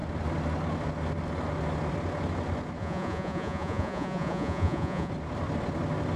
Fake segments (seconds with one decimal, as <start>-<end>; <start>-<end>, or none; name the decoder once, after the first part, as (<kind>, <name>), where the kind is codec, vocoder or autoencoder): 2.8-5.1 (vocoder, Vocos)